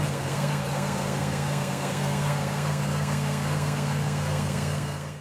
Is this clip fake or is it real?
fake